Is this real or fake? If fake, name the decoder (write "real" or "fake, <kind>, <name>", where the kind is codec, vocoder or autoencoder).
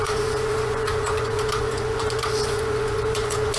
fake, vocoder, Vocos